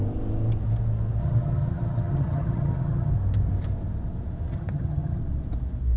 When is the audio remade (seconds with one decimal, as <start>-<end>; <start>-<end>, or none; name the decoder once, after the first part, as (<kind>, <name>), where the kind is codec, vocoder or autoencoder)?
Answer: 1.2-3.1 (vocoder, HiFi-GAN); 4.5-5.2